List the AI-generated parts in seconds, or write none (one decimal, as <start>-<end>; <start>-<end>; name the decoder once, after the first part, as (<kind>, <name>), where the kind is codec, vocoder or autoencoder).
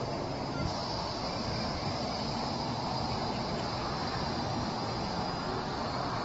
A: 0.8-4.5 (vocoder, BigVGAN v2)